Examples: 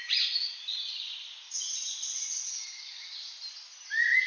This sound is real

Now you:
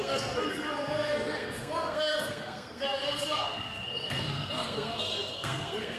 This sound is fake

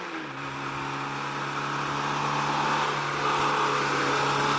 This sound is real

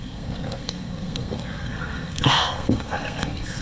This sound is fake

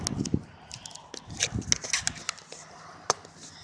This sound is real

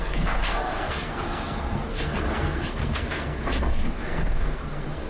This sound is fake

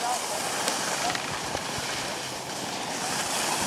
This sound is real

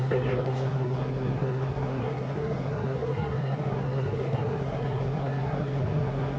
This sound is fake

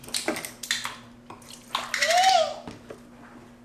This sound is real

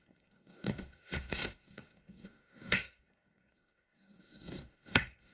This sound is fake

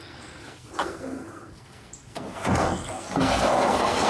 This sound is fake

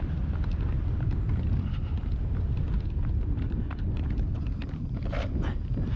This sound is real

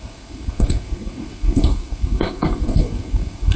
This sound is fake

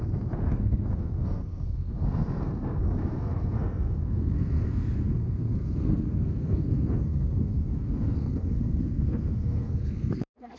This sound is fake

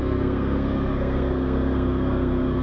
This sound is fake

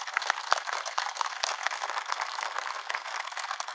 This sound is fake